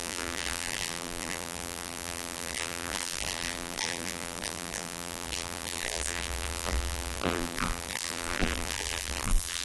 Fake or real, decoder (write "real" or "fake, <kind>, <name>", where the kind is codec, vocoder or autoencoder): fake, vocoder, BigVGAN v2